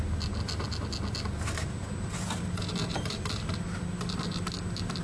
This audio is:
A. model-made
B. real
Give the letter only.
B